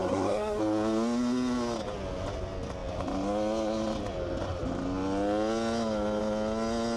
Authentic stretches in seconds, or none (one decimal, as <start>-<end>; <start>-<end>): 0.6-7.0